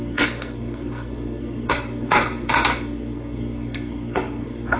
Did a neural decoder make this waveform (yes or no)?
yes